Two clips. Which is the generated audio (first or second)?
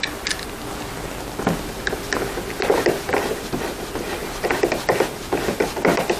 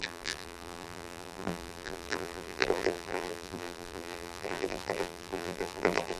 second